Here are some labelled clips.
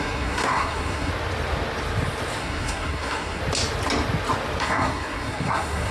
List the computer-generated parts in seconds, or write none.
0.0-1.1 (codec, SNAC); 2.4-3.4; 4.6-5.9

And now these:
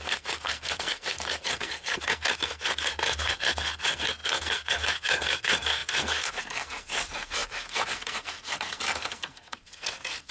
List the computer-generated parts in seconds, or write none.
0.0-10.3 (codec, SNAC)